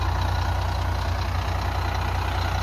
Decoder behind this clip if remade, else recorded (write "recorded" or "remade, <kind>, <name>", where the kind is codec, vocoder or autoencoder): recorded